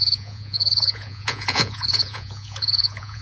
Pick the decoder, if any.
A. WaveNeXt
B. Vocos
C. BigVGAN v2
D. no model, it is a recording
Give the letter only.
B